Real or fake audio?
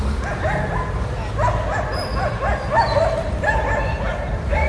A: real